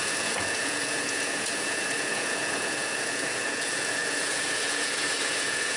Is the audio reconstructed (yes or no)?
yes